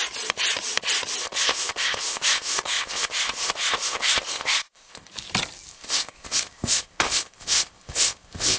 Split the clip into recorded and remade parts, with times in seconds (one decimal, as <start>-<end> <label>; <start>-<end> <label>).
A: 0.0-1.2 recorded; 1.2-5.1 remade; 5.1-5.7 recorded; 5.7-8.6 remade